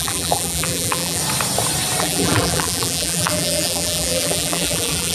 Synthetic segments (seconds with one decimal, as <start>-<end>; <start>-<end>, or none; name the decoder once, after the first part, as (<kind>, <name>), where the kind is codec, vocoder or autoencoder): 0.0-1.2 (vocoder, BigVGAN v2); 2.0-5.1